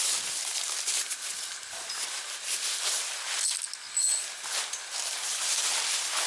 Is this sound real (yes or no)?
yes